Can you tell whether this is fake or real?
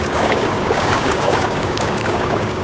fake